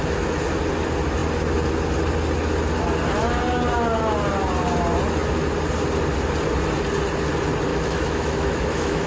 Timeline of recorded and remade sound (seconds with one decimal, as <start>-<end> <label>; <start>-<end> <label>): 0.0-7.7 recorded; 7.7-9.1 remade